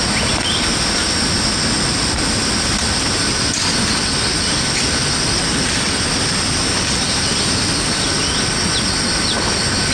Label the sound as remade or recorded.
recorded